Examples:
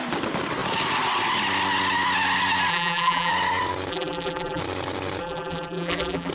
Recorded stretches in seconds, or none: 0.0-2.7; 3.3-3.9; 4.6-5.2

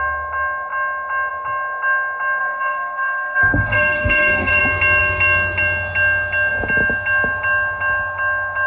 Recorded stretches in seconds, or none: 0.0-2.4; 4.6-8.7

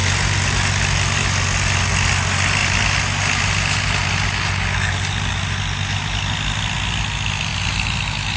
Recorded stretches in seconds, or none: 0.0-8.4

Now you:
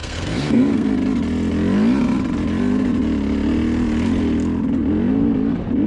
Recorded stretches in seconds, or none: 0.9-5.9

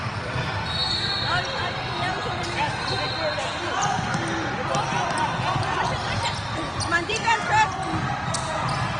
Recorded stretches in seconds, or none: 0.8-3.9

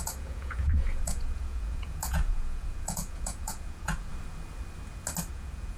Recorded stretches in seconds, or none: 4.1-5.3